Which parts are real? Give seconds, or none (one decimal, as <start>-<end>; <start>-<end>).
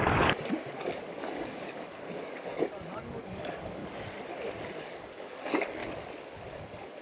3.8-4.8; 5.8-6.5